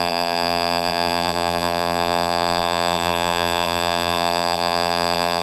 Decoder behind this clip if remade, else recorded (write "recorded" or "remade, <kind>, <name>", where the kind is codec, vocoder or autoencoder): remade, vocoder, BigVGAN v2